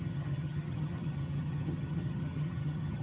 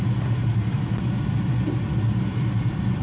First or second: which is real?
second